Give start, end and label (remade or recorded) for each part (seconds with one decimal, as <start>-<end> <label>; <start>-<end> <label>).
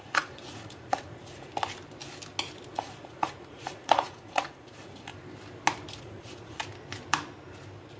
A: 0.0-1.5 remade; 1.5-2.7 recorded; 2.7-5.1 remade; 5.1-6.0 recorded; 6.0-6.6 remade; 6.6-8.0 recorded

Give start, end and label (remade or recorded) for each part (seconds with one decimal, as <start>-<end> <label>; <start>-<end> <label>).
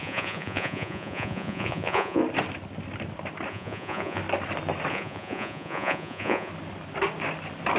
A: 0.0-2.2 remade; 2.2-3.5 recorded; 3.5-4.2 remade; 4.2-4.9 recorded; 4.9-6.5 remade; 6.5-7.8 recorded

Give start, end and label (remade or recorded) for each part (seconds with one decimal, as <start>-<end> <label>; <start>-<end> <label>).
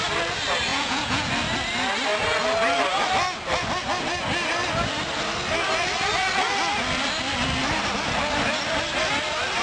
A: 0.0-0.7 recorded; 0.7-1.3 remade; 1.3-9.6 recorded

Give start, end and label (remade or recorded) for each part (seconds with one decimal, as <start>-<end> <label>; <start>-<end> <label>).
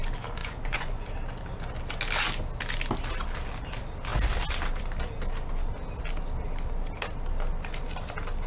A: 0.0-0.4 recorded; 0.4-1.1 remade; 1.1-8.5 recorded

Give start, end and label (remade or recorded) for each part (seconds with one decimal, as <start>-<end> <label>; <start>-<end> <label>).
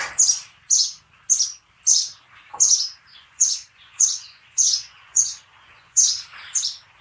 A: 0.0-3.1 recorded; 3.1-6.1 remade; 6.1-7.0 recorded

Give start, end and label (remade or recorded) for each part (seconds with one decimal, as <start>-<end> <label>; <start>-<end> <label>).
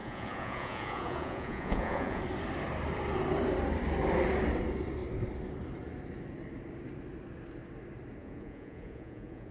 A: 0.0-2.2 remade; 2.2-8.2 recorded; 8.2-9.5 remade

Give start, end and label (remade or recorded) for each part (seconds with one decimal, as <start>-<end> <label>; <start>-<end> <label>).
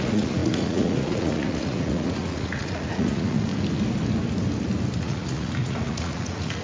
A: 0.0-3.5 remade; 3.5-5.0 recorded; 5.0-6.6 remade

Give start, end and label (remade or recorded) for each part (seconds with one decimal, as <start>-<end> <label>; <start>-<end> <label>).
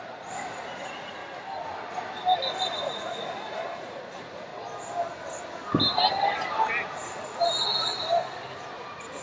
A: 0.0-1.2 remade; 1.2-2.8 recorded; 2.8-4.5 remade; 4.5-8.7 recorded; 8.7-9.2 remade